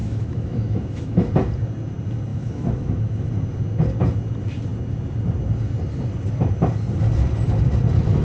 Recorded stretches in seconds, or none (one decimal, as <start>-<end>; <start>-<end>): 1.3-2.3; 3.3-8.2